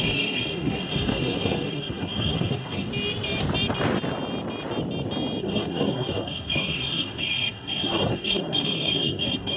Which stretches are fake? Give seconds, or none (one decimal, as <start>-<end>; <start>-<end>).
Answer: 0.0-2.9; 5.4-9.6

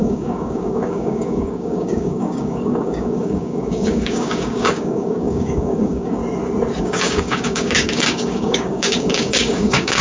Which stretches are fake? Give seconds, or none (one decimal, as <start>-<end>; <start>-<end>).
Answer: 0.0-6.2; 6.8-10.0

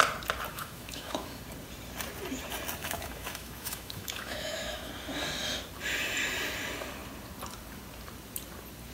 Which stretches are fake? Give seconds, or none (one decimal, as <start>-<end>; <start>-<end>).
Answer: 0.5-1.4; 2.8-4.9

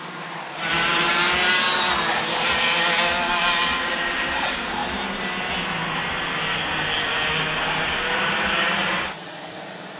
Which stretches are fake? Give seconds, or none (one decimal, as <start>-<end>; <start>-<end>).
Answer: 0.0-1.1; 2.1-4.8; 8.1-10.0

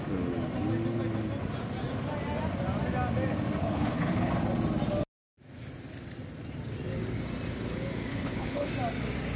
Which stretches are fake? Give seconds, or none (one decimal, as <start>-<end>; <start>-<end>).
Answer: 3.6-4.3; 8.1-8.7

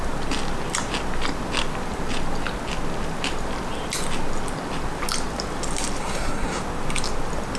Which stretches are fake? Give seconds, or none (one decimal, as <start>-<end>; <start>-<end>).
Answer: 6.0-6.6

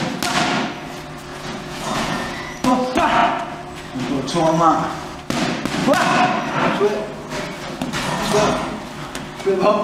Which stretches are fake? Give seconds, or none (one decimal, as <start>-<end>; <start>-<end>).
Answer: 1.3-2.8